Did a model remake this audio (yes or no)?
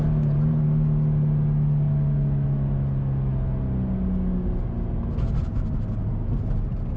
no